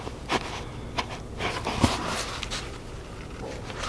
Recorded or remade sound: remade